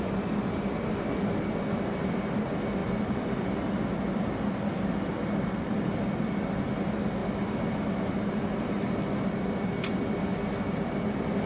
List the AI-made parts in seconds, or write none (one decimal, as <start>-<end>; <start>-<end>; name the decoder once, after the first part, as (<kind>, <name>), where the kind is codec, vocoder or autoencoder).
none